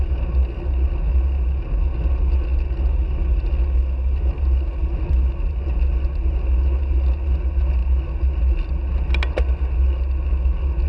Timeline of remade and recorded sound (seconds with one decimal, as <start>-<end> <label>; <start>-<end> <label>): 0.0-10.9 recorded